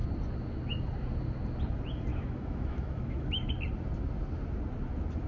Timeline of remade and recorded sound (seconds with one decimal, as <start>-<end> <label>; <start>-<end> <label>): 0.0-2.1 recorded; 2.1-3.5 remade; 3.5-5.3 recorded